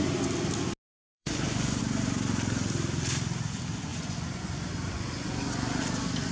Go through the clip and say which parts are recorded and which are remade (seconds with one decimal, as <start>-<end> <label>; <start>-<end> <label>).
0.0-1.1 recorded; 1.1-1.8 remade; 1.8-3.9 recorded; 3.9-5.8 remade; 5.8-6.3 recorded